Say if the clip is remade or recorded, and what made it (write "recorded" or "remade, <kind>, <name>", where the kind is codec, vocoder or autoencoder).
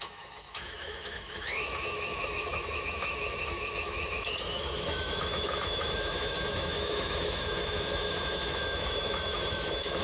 remade, autoencoder, DAC-VAE